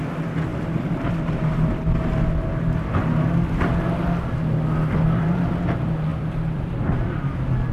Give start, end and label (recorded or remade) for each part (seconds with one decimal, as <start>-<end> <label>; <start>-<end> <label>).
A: 0.0-0.5 recorded; 0.5-1.1 remade; 1.1-6.1 recorded; 6.1-6.7 remade; 6.7-7.7 recorded